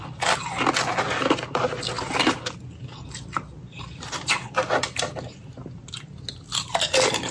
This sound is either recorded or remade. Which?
recorded